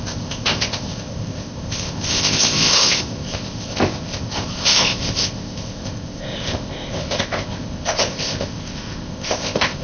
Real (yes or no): no